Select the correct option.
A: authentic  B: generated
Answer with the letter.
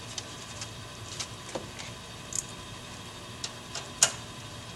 A